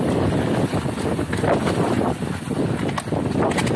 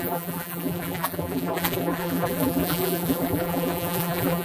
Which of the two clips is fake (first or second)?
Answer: second